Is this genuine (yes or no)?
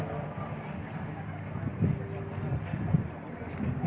yes